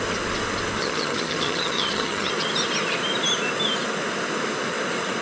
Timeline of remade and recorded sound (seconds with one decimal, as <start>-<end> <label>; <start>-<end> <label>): 0.0-0.8 recorded; 0.8-2.3 remade; 2.3-5.2 recorded